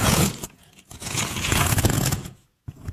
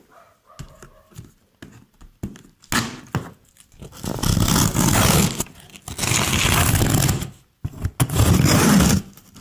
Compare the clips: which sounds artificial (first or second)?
first